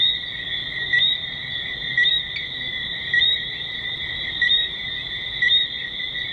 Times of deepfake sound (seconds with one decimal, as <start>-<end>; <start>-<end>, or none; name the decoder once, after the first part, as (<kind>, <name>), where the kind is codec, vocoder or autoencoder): 2.7-5.6 (vocoder, BigVGAN v2)